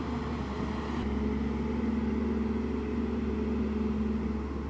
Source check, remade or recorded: recorded